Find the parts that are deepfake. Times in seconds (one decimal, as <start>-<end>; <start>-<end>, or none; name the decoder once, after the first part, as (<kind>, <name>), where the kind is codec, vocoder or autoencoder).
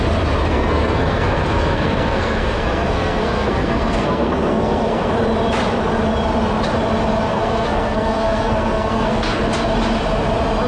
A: 0.5-5.1 (codec, SNAC); 7.3-9.4